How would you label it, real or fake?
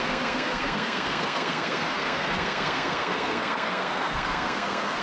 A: fake